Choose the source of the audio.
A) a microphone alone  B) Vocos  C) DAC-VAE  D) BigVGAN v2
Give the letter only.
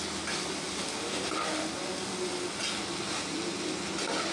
A